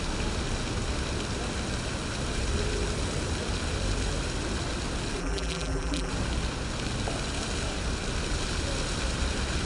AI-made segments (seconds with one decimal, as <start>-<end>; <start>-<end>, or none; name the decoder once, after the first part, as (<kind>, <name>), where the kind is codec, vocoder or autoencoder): 5.2-6.1 (vocoder, BigVGAN v2)